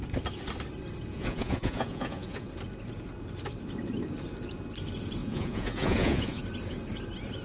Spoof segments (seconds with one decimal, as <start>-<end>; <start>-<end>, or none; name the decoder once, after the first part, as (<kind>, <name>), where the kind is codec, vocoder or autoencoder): 1.1-2.5 (vocoder, Vocos); 5.2-6.4